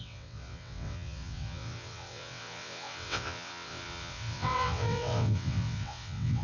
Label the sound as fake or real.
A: fake